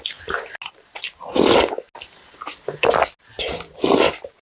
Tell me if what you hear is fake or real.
real